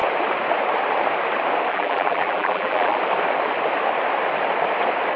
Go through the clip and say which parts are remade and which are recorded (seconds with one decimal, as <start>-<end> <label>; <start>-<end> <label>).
0.0-1.7 recorded; 1.7-3.0 remade; 3.0-5.2 recorded